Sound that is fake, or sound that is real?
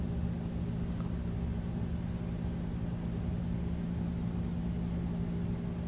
real